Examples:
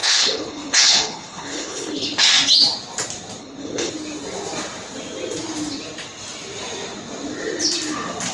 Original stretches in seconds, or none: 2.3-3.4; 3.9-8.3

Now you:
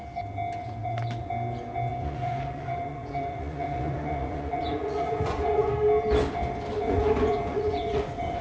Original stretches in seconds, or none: 0.0-0.6; 1.3-1.9; 5.7-6.7

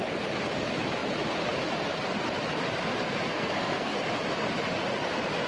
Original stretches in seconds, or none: 0.0-3.3; 3.9-5.5